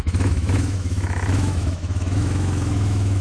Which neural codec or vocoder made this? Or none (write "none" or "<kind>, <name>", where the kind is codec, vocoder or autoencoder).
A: autoencoder, DAC-VAE